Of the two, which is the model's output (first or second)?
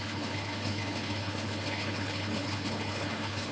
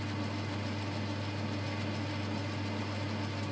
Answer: first